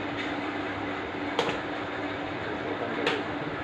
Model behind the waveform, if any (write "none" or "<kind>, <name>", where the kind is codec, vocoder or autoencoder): none